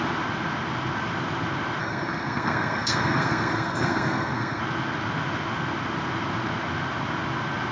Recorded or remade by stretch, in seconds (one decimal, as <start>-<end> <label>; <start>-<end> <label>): 0.0-1.8 recorded; 1.8-4.6 remade; 4.6-7.7 recorded